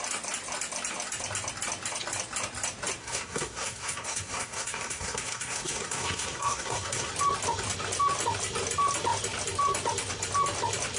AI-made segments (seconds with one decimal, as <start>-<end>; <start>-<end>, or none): 3.0-7.1